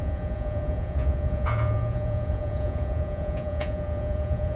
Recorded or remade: remade